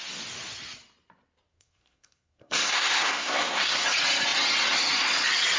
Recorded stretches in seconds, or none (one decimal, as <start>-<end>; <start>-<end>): 0.0-1.5; 3.8-5.6